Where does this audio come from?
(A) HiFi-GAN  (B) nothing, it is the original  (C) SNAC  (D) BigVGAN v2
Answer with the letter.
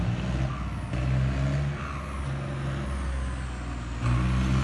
B